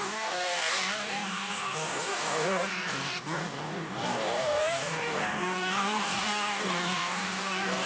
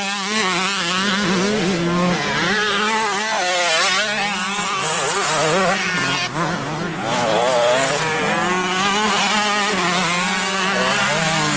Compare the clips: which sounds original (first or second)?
second